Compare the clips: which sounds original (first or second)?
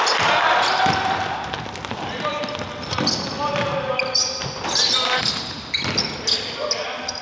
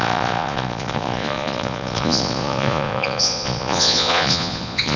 first